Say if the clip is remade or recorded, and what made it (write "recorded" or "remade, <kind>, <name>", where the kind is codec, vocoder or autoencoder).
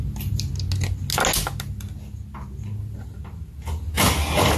recorded